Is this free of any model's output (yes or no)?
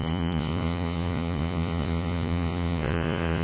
no